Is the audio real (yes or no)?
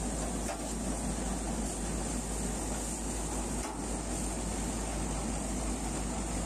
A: yes